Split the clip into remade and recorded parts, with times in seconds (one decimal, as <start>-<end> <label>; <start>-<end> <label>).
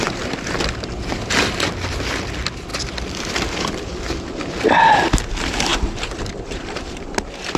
0.0-5.7 recorded; 5.7-7.6 remade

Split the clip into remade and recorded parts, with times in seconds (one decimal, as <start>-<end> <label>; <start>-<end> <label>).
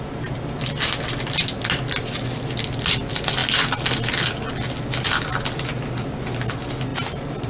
0.0-6.9 recorded; 6.9-7.5 remade